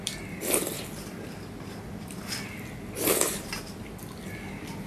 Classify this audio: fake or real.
fake